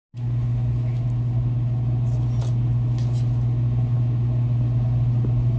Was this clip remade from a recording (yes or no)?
no